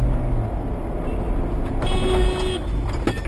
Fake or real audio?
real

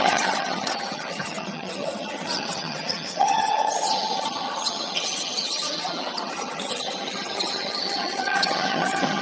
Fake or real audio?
fake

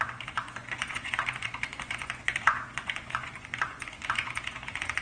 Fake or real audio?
fake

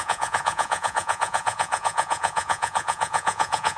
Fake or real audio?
fake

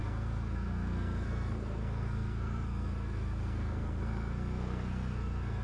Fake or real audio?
fake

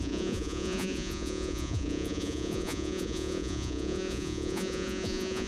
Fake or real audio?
fake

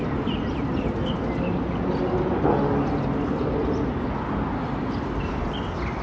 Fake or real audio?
real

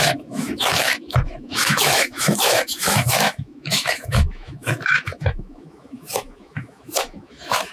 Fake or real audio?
fake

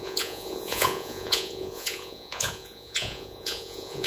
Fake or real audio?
fake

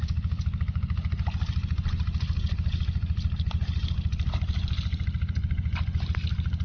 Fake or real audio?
real